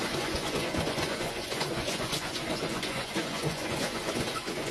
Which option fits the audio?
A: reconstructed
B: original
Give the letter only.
A